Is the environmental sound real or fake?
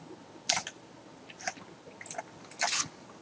real